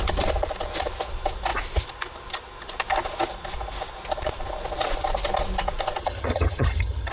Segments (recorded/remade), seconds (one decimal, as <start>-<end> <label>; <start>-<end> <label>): 0.0-6.0 recorded; 6.0-7.1 remade